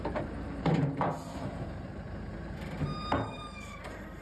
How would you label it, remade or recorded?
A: remade